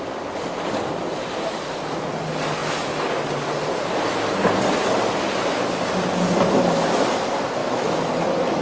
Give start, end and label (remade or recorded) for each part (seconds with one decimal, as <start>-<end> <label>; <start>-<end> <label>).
0.0-7.6 recorded; 7.6-8.1 remade; 8.1-8.6 recorded